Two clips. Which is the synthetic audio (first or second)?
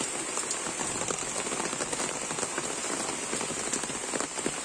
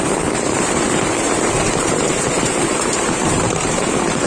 second